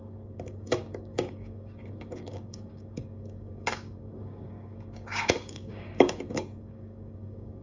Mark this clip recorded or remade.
remade